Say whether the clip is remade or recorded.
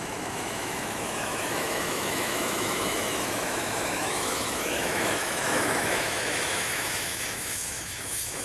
remade